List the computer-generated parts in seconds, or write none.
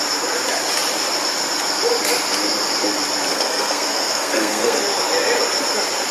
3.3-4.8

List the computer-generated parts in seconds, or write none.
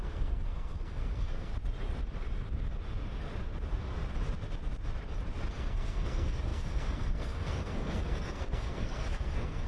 0.0-1.5; 5.5-9.7